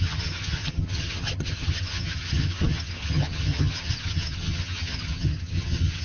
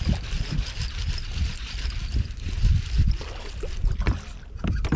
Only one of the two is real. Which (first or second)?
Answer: second